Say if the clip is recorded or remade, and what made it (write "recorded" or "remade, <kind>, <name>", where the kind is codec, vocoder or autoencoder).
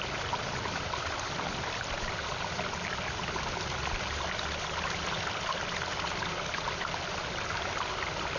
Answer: recorded